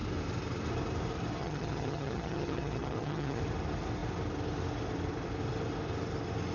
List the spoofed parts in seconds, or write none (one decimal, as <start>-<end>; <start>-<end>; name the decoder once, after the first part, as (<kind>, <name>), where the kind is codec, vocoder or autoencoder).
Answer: 1.4-3.4 (vocoder, HiFi-GAN)